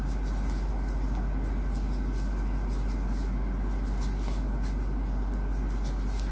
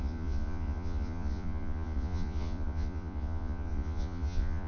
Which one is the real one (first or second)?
first